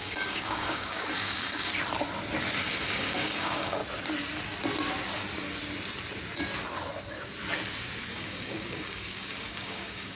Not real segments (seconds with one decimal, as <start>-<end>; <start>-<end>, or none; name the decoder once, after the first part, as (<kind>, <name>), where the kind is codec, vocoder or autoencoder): 0.0-1.7 (codec, DAC); 2.8-3.8; 8.1-10.2